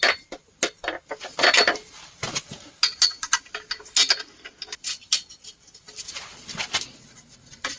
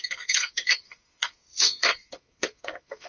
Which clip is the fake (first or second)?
second